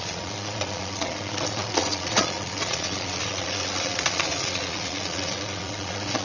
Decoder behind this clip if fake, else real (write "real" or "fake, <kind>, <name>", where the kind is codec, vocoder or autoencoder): fake, vocoder, Vocos